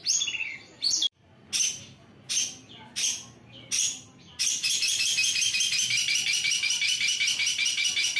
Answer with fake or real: real